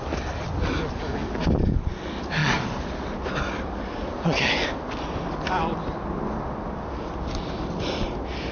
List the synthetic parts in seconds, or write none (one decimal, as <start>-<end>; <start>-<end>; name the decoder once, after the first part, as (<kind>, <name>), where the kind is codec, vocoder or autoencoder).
none